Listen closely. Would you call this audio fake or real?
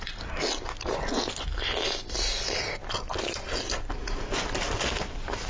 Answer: real